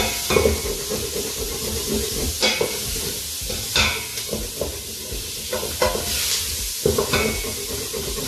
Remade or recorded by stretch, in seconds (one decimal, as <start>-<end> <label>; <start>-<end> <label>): 0.0-8.3 recorded